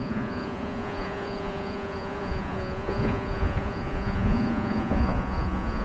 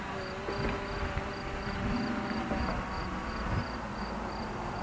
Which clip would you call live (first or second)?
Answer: second